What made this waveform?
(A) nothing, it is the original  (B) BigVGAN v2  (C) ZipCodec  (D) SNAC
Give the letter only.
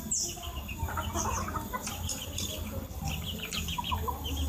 B